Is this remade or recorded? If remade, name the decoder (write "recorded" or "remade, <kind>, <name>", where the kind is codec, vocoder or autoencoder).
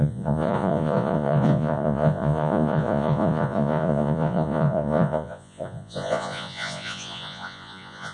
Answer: remade, vocoder, Vocos